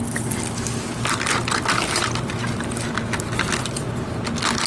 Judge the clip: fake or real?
real